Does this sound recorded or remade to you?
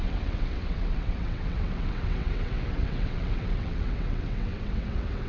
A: remade